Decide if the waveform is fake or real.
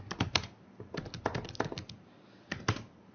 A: real